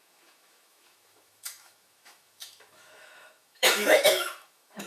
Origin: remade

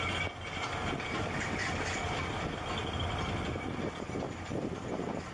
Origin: recorded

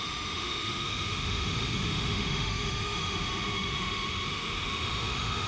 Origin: remade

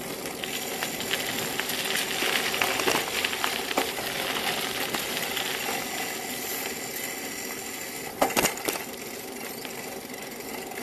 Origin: recorded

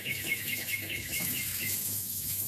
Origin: remade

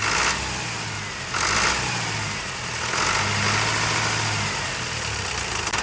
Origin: recorded